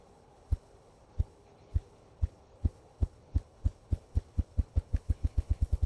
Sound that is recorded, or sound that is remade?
remade